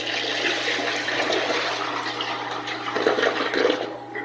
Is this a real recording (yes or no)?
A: yes